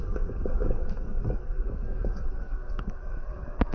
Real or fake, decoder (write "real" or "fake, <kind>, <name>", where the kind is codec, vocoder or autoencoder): fake, codec, DAC